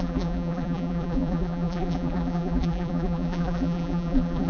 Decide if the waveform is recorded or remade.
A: remade